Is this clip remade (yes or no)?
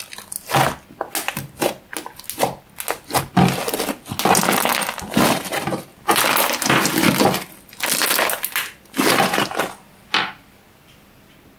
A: no